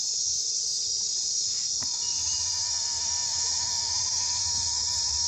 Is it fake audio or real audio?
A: real